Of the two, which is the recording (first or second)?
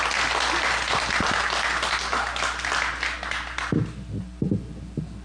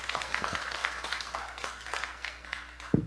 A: first